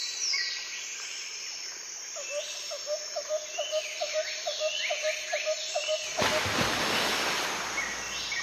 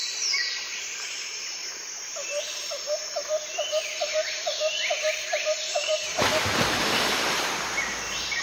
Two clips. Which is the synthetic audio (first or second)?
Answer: second